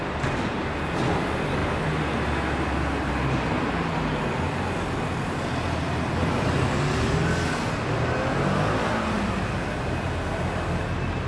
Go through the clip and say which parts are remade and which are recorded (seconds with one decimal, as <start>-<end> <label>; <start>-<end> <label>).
0.0-11.3 recorded